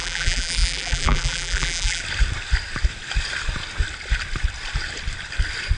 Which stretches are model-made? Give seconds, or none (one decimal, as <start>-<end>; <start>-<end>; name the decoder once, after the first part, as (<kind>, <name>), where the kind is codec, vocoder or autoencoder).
0.0-2.0 (vocoder, BigVGAN v2)